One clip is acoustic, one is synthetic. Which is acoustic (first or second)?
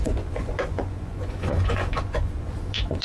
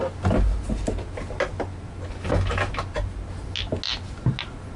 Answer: second